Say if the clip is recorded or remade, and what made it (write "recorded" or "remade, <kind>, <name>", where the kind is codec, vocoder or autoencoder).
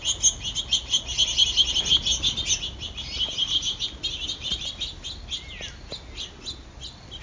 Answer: recorded